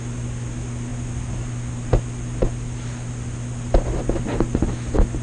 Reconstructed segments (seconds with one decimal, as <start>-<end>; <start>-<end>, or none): none